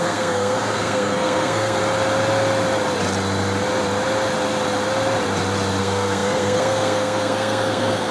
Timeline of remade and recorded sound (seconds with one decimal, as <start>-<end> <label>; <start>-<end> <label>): 0.0-1.8 remade; 1.8-5.8 recorded; 5.8-8.1 remade